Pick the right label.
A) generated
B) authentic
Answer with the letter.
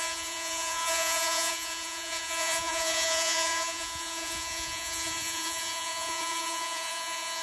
A